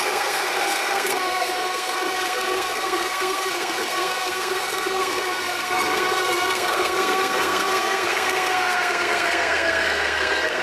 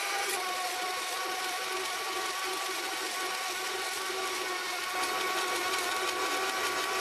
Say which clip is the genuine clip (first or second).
second